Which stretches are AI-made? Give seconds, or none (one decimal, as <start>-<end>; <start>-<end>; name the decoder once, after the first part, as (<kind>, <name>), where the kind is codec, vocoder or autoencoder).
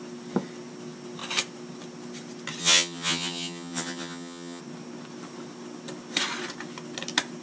2.6-4.6 (vocoder, HiFi-GAN)